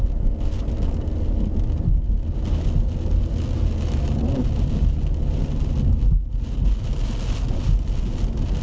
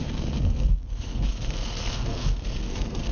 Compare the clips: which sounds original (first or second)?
first